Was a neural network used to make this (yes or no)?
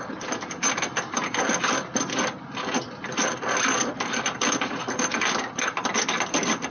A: no